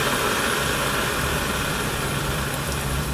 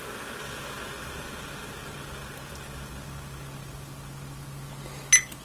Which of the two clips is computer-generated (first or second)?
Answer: first